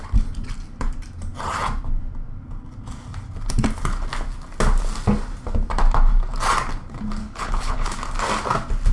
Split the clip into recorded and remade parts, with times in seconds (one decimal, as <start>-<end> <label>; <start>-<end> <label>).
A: 0.0-7.2 recorded; 7.2-7.9 remade; 7.9-8.9 recorded